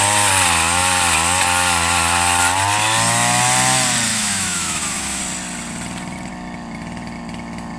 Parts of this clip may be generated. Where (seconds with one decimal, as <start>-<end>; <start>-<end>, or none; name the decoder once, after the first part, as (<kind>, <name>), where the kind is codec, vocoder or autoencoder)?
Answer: 4.1-5.2 (autoencoder, DAC-VAE)